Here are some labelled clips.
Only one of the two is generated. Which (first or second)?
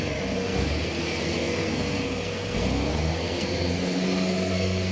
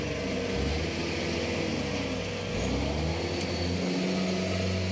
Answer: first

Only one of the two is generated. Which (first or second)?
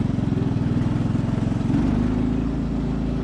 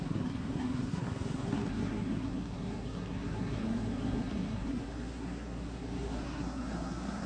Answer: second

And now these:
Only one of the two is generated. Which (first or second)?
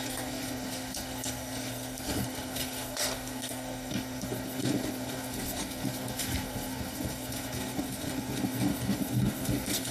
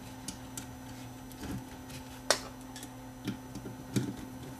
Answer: first